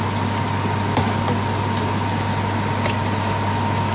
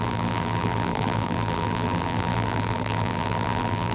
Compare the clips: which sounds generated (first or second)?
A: second